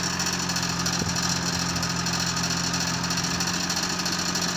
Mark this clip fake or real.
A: real